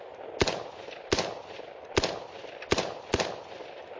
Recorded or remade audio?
recorded